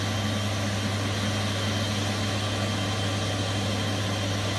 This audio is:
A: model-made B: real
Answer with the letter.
B